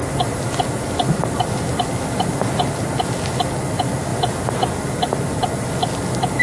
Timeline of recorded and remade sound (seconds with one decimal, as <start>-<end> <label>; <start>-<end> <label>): 0.0-6.4 recorded